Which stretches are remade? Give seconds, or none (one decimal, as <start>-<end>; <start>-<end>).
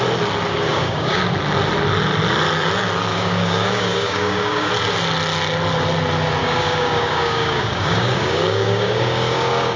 0.7-1.2; 3.1-4.7; 6.4-9.8